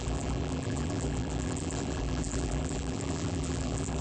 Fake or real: fake